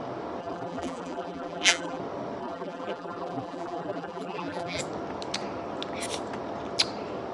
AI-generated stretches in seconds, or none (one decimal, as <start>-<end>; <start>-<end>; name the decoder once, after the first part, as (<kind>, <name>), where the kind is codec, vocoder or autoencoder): 0.4-2.0 (vocoder, BigVGAN v2); 2.4-4.8